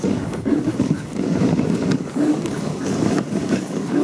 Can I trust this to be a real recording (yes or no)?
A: no